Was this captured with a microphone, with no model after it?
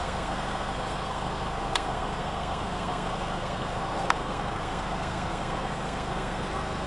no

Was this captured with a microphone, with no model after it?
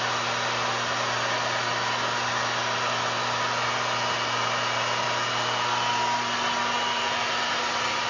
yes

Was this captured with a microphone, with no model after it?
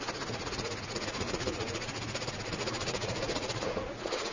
no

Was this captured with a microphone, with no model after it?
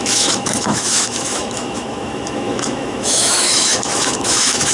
no